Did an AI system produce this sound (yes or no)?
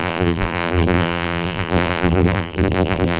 yes